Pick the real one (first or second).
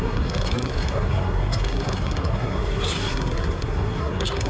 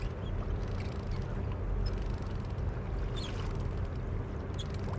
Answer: second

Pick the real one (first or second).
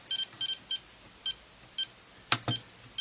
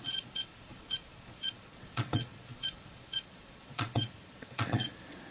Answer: first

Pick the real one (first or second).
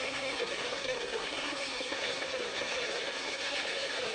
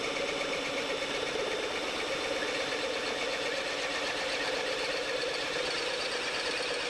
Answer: second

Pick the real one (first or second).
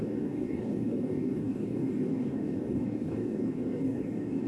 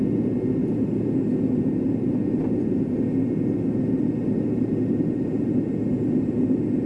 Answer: second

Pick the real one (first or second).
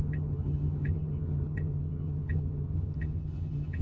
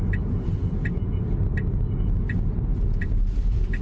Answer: second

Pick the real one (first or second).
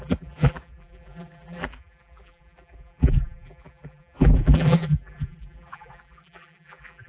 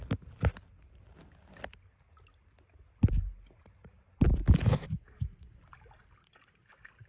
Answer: second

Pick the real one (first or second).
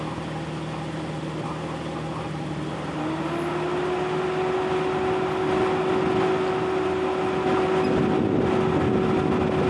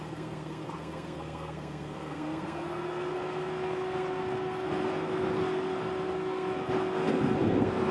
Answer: first